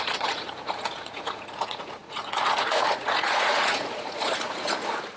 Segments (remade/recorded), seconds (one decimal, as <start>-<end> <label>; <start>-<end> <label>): 0.0-5.2 remade